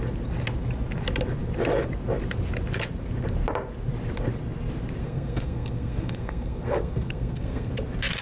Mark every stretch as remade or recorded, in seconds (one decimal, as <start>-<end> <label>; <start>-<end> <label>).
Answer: 0.0-5.0 recorded; 5.0-7.7 remade; 7.7-8.2 recorded